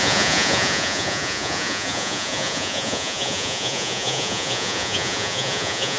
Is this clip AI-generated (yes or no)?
yes